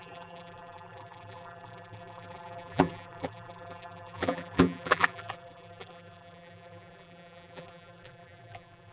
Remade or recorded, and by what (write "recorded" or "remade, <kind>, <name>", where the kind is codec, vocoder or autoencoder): remade, vocoder, BigVGAN v2